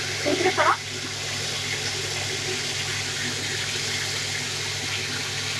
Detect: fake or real real